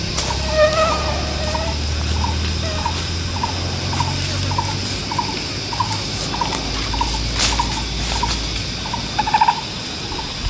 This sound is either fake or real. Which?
real